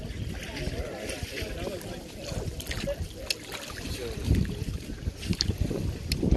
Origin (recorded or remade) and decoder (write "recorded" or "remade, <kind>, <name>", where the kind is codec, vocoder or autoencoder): recorded